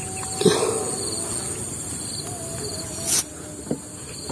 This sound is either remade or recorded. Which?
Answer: recorded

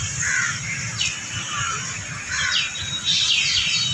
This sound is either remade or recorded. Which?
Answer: recorded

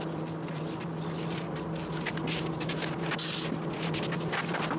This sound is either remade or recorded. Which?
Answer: recorded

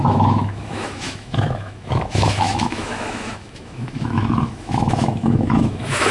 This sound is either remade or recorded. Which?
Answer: remade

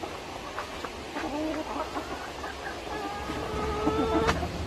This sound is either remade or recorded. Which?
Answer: recorded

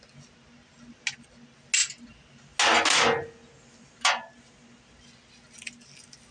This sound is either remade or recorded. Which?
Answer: recorded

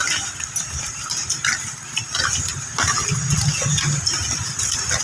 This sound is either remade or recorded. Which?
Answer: recorded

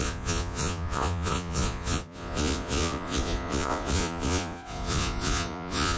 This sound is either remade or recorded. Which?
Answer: remade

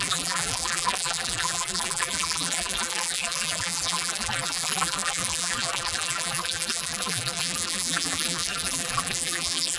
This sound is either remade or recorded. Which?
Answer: remade